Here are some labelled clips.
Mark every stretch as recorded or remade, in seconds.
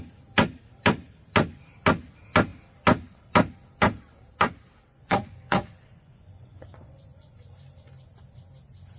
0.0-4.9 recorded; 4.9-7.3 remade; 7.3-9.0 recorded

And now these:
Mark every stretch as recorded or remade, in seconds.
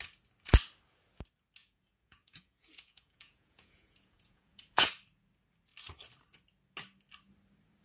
0.0-1.6 recorded; 1.6-4.9 remade; 4.9-7.8 recorded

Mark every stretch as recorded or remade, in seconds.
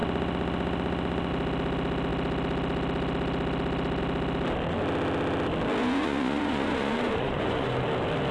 0.0-1.3 remade; 1.3-5.8 recorded; 5.8-7.8 remade; 7.8-8.3 recorded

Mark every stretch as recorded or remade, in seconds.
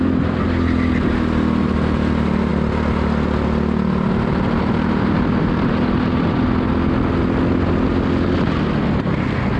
0.0-9.6 recorded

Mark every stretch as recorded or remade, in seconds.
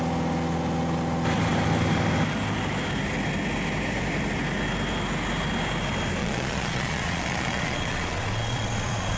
0.0-6.2 recorded; 6.2-9.2 remade